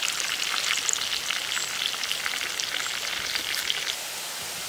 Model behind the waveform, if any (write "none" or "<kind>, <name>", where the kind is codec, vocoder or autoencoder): none